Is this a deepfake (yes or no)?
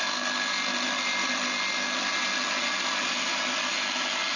no